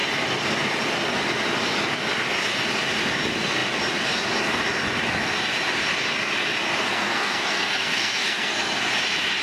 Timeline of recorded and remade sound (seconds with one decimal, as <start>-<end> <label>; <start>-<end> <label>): 0.0-6.9 recorded; 6.9-8.9 remade; 8.9-9.4 recorded